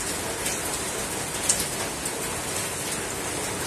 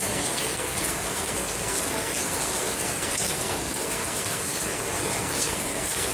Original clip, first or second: first